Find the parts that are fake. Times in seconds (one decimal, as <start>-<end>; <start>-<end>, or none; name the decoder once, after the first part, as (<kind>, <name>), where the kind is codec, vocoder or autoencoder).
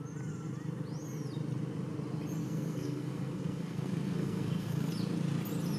2.4-4.9 (codec, SNAC)